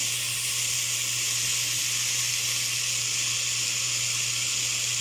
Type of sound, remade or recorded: recorded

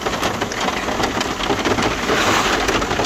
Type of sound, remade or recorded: recorded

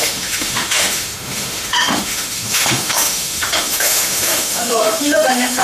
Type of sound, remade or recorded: remade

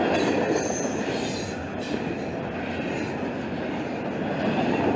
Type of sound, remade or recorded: recorded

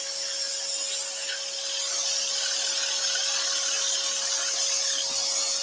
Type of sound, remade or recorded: recorded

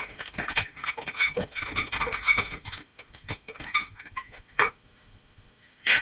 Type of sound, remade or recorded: remade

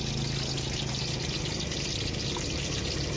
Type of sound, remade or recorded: recorded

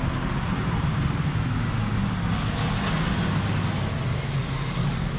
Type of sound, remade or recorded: recorded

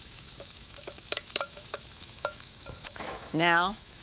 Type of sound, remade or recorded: remade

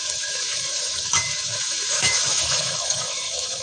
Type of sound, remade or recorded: remade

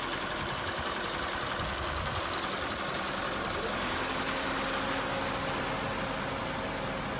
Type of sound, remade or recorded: recorded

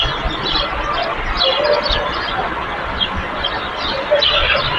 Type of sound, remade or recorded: recorded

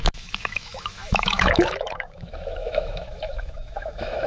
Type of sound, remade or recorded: remade